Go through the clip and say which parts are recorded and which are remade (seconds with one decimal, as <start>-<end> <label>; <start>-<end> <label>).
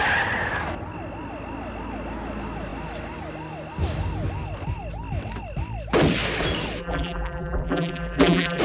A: 0.0-6.8 recorded; 6.8-8.6 remade